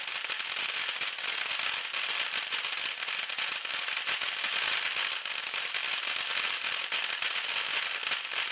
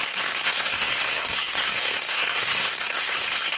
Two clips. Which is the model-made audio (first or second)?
second